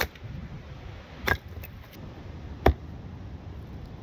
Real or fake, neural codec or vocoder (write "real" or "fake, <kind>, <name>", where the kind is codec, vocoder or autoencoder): real